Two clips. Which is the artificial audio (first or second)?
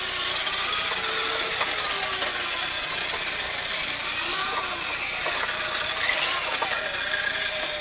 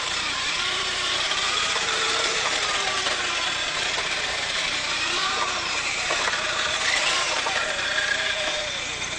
second